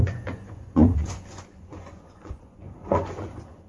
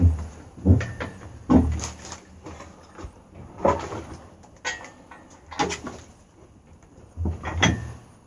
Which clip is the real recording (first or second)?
second